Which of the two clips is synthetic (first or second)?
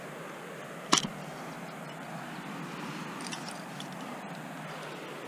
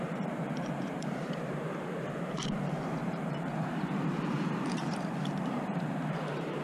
second